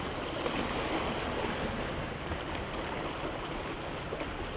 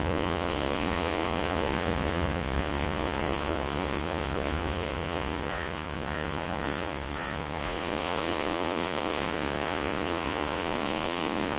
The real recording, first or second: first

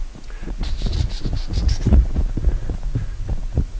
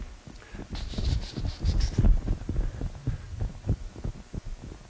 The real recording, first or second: second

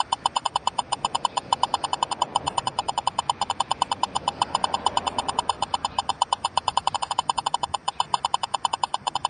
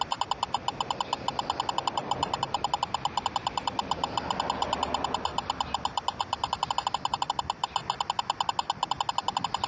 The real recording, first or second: second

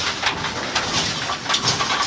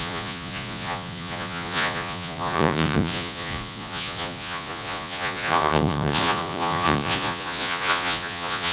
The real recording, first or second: first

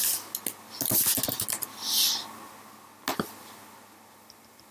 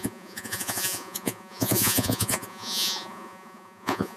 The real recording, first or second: first